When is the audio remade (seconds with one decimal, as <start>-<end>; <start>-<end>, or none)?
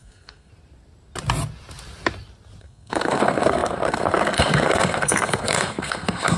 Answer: 0.0-0.5; 2.6-6.4